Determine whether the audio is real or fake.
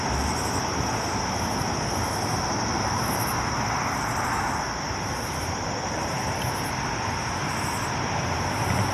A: fake